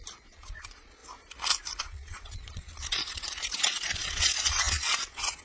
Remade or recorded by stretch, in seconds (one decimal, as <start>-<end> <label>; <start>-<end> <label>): 0.0-1.0 remade; 1.0-1.8 recorded; 1.8-5.4 remade